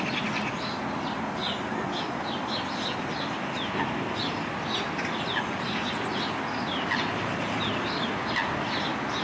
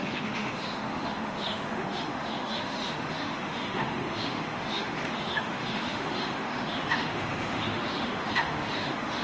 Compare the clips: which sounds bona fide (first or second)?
first